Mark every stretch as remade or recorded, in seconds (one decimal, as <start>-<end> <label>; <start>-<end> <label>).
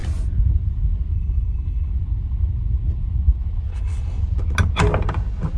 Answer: 0.0-1.1 recorded; 1.1-1.9 remade; 1.9-3.7 recorded; 3.7-4.2 remade; 4.2-5.6 recorded